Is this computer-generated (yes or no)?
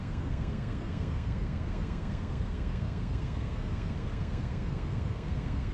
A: yes